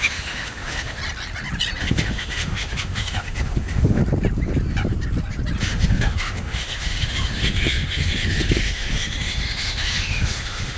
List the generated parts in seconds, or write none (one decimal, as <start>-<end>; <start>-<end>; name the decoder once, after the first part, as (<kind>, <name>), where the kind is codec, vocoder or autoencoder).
0.0-1.0 (autoencoder, DAC-VAE); 1.8-4.0; 5.6-10.8